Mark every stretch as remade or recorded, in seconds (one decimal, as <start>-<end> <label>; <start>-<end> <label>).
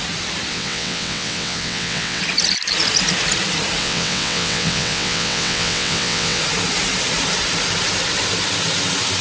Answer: 0.0-0.5 recorded; 0.5-2.2 remade; 2.2-3.8 recorded; 3.8-6.4 remade; 6.4-9.2 recorded